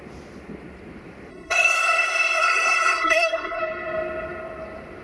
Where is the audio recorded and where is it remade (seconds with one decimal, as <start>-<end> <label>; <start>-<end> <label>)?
0.0-1.3 recorded; 1.3-3.6 remade; 3.6-5.0 recorded